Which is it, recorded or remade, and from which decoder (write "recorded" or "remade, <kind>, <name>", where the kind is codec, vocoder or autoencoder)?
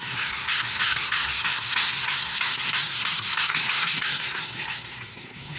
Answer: remade, codec, SNAC